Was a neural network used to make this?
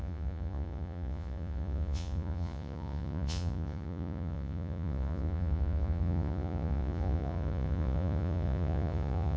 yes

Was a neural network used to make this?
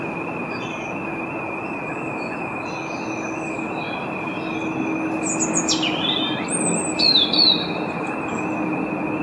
no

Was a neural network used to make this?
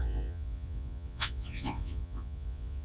yes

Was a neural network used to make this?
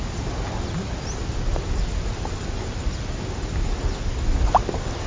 no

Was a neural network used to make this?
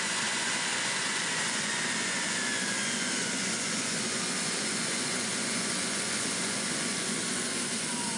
yes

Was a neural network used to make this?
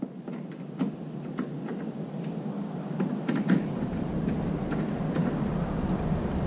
no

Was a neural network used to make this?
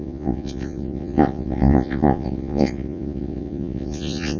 yes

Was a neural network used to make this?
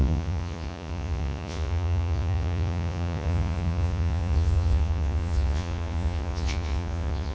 yes